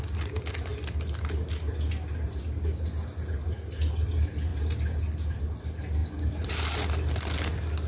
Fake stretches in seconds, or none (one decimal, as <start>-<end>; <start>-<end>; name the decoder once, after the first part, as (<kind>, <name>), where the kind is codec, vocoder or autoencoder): none